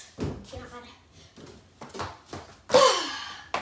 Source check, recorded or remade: recorded